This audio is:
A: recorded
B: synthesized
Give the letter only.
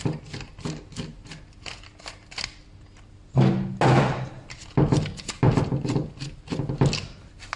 A